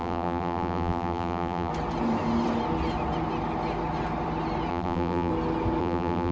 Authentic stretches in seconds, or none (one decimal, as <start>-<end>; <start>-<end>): 1.7-4.7; 5.3-5.8